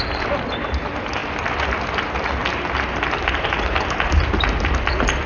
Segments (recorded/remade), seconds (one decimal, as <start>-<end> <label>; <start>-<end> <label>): 0.0-5.3 recorded